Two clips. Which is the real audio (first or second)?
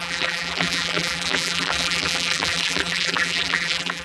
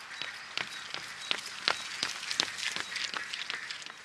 second